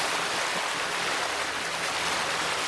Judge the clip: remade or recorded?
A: recorded